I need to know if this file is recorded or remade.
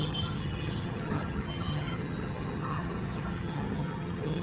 remade